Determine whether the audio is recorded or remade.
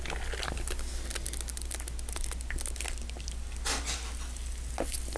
recorded